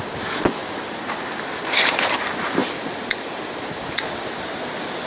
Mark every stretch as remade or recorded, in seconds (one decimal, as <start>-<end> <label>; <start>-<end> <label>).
0.0-2.6 remade; 2.6-3.3 recorded; 3.3-5.1 remade

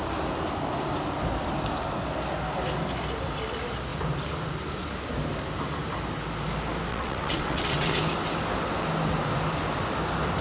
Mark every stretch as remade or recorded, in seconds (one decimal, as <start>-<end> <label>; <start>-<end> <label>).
0.0-6.9 recorded; 6.9-8.0 remade; 8.0-10.4 recorded

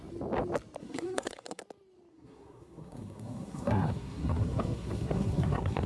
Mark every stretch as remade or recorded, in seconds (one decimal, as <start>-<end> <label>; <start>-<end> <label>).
0.0-0.8 recorded; 0.8-1.6 remade; 1.6-2.1 recorded; 2.1-5.9 remade

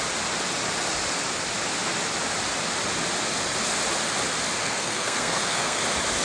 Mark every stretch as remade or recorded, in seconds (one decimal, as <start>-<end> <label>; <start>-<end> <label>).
0.0-4.6 recorded; 4.6-5.8 remade; 5.8-6.2 recorded

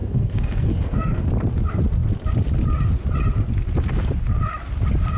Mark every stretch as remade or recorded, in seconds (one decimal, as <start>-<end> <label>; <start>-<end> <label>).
0.0-1.3 remade; 1.3-5.2 recorded

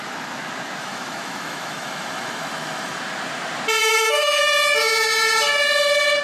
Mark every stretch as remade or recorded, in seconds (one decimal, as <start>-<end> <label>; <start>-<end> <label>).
0.0-0.8 recorded; 0.8-3.0 remade; 3.0-3.8 recorded; 3.8-4.4 remade; 4.4-6.2 recorded

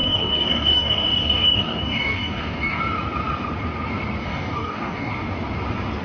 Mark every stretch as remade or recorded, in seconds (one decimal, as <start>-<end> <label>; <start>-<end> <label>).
0.0-2.8 remade; 2.8-4.2 recorded; 4.2-5.1 remade; 5.1-6.0 recorded